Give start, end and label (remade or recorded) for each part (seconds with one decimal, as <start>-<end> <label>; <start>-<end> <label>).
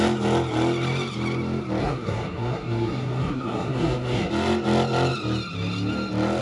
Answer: 0.0-1.8 recorded; 1.8-4.3 remade; 4.3-6.4 recorded